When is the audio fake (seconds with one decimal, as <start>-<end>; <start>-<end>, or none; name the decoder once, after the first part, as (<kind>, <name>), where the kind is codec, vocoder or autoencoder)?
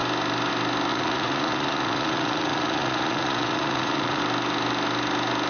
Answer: 0.9-4.2 (vocoder, Vocos)